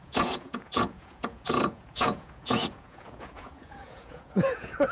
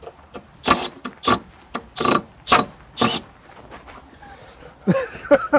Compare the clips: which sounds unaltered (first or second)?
second